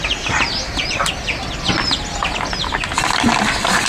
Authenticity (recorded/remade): recorded